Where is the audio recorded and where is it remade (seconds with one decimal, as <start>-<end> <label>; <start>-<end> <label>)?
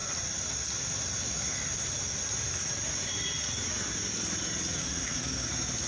0.0-4.8 recorded; 4.8-5.5 remade; 5.5-5.9 recorded